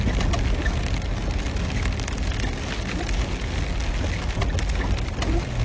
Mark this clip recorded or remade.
recorded